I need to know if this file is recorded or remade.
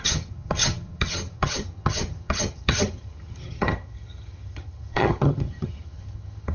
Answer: remade